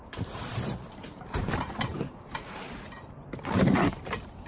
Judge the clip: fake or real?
fake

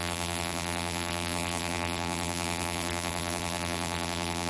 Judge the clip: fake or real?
fake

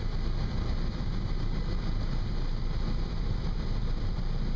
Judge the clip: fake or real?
fake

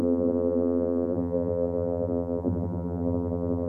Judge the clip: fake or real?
fake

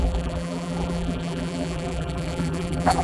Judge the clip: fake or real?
fake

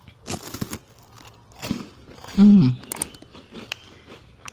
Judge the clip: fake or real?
real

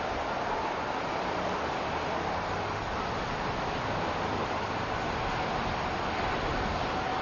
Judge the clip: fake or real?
real